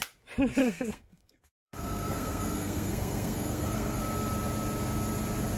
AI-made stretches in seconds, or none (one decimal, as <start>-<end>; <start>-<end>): 0.6-4.0